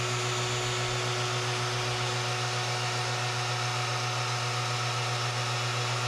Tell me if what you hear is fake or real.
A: real